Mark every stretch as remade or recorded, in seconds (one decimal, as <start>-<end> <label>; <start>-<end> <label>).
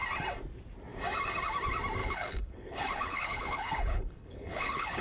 0.0-2.0 recorded; 2.0-5.0 remade